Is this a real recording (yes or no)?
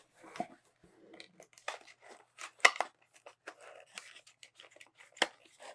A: yes